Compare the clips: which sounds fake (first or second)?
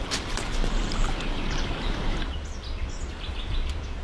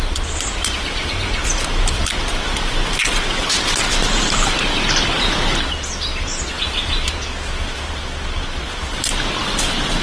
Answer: first